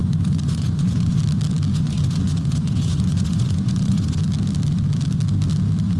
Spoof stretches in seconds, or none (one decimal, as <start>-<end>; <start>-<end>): 0.0-1.2; 1.7-4.2